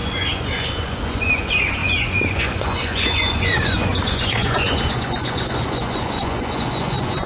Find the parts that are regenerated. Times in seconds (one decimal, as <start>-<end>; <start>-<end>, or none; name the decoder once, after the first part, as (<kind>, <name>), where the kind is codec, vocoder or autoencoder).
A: 0.0-7.3 (vocoder, Vocos)